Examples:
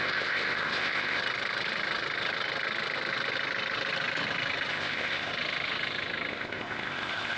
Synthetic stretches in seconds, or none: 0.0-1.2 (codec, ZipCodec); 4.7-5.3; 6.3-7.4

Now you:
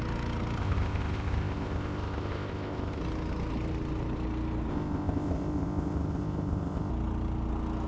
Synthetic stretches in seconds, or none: 0.6-3.0 (codec, ZipCodec); 4.7-6.9

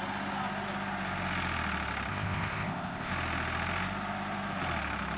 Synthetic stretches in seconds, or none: 2.1-3.1 (codec, ZipCodec)

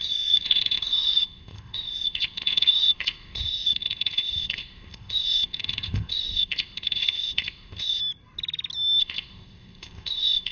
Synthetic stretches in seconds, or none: 0.0-8.0 (codec, ZipCodec); 9.0-10.5

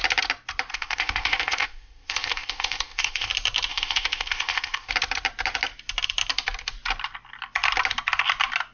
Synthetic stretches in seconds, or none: 0.7-3.3 (codec, ZipCodec); 3.7-4.9

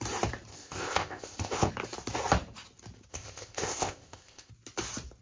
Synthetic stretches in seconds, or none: 0.5-1.7 (codec, ZipCodec); 3.1-4.5

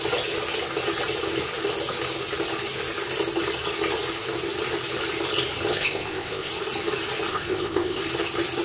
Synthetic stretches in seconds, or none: 5.7-6.5 (codec, ZipCodec); 7.3-8.0

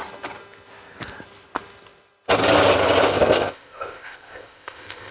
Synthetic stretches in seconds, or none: 3.1-5.1 (codec, ZipCodec)